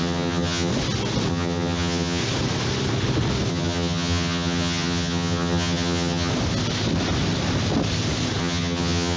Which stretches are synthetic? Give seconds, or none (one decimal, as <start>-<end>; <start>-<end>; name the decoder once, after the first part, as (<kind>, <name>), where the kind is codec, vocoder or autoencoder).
0.0-0.7 (vocoder, HiFi-GAN); 1.3-2.2; 3.5-6.3; 8.4-9.2